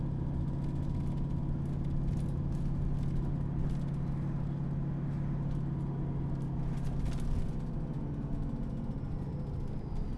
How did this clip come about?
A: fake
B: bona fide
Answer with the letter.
B